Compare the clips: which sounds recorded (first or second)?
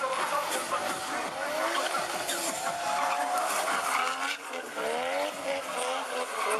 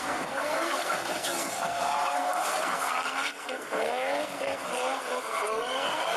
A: first